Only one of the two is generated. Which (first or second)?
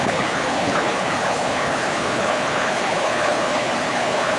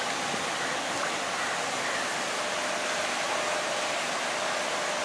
first